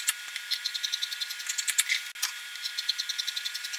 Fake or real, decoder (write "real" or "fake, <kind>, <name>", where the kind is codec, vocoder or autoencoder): real